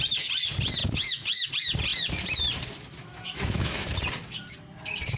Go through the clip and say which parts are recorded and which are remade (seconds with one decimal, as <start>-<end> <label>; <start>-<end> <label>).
0.0-0.8 recorded; 0.8-1.5 remade; 1.5-3.0 recorded; 3.0-3.9 remade; 3.9-5.2 recorded